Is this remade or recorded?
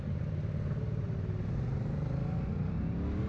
recorded